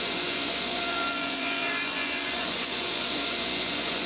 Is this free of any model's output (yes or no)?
no